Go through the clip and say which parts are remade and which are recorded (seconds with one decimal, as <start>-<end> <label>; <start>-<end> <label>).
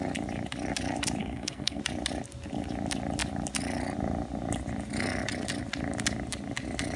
0.0-1.2 recorded; 1.2-1.8 remade; 1.8-7.0 recorded